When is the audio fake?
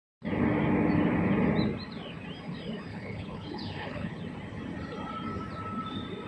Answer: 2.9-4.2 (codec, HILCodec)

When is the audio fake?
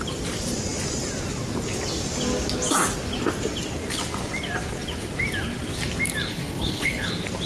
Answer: 6.3-7.1 (codec, HILCodec)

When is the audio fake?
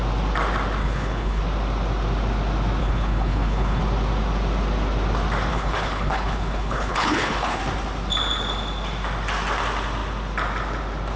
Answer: 0.8-1.4 (codec, HILCodec); 2.8-3.8; 5.5-7.6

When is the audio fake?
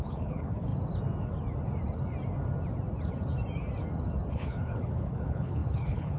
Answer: 0.0-0.7 (codec, HILCodec); 4.3-6.2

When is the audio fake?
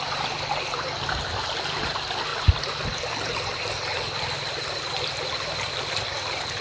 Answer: none